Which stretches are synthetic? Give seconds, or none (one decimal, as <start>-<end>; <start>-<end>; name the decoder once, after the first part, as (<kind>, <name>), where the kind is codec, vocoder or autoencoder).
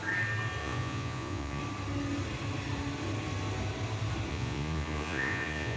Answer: 0.6-1.6 (vocoder, Vocos); 4.3-5.8